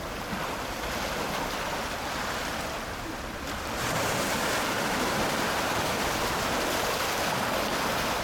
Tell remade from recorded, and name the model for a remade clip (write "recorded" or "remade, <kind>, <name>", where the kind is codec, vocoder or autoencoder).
remade, vocoder, BigVGAN v2